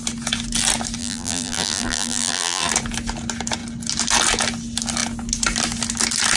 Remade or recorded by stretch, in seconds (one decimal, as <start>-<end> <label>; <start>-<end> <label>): 0.0-1.0 recorded; 1.0-2.7 remade; 2.7-6.4 recorded